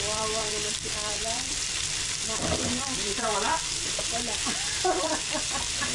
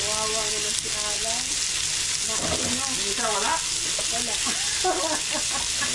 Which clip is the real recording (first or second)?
second